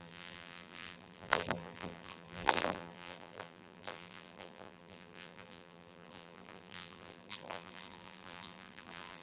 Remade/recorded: remade